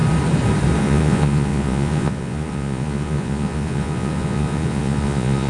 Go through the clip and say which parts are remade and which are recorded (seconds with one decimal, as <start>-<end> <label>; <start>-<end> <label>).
0.0-0.8 recorded; 0.8-5.5 remade